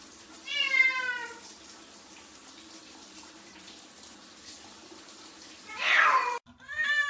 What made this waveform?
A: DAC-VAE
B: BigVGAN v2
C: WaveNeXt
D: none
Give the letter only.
B